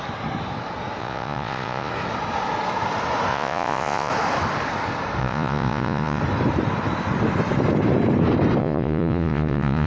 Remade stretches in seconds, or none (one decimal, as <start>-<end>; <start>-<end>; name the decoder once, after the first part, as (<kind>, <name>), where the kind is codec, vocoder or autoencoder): 1.0-1.9 (vocoder, Vocos); 3.3-4.1; 5.2-6.2; 8.6-9.9